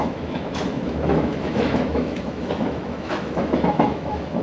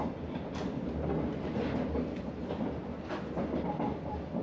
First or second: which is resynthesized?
first